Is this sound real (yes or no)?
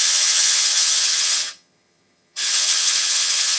no